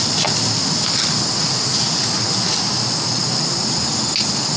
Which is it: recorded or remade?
recorded